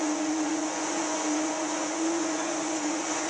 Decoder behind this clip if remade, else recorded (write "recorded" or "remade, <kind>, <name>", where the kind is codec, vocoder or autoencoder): remade, vocoder, Vocos